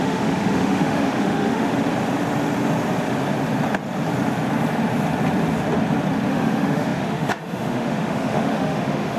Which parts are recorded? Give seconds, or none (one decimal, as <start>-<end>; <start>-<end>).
1.7-6.3